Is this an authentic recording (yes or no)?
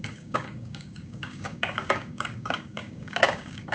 no